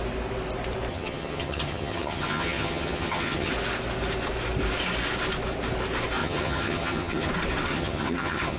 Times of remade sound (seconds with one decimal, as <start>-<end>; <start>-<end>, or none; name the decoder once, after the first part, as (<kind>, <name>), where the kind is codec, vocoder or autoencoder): 0.9-3.5 (vocoder, HiFi-GAN); 6.2-7.3; 7.7-8.6